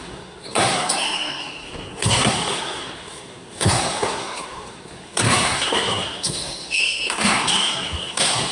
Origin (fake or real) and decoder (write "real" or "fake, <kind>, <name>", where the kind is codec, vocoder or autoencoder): fake, codec, SNAC